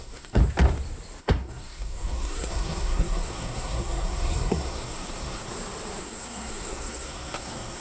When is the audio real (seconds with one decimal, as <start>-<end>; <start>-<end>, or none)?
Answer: 0.4-1.2; 5.5-6.0